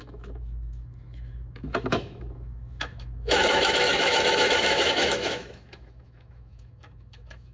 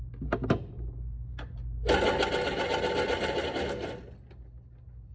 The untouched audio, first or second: second